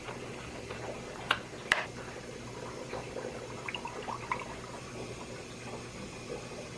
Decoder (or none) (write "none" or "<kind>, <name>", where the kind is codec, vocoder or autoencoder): none